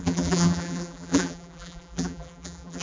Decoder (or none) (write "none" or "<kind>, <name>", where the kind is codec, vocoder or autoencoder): vocoder, BigVGAN v2